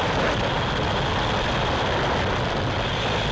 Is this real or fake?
real